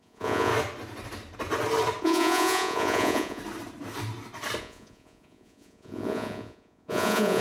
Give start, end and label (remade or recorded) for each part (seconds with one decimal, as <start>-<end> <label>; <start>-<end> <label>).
0.0-0.5 remade; 0.5-2.0 recorded; 2.0-3.4 remade; 3.4-4.6 recorded; 4.6-7.4 remade